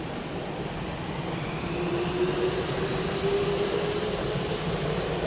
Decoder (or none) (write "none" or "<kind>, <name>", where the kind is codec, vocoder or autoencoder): none